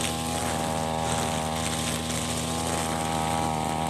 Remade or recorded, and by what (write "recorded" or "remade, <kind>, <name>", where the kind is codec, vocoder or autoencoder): recorded